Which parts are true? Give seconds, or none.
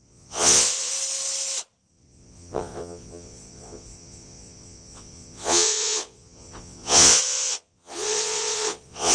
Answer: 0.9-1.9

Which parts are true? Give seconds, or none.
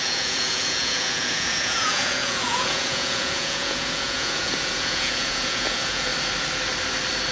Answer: 6.1-7.3